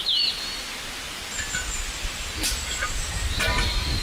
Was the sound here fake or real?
real